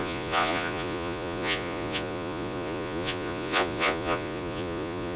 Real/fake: fake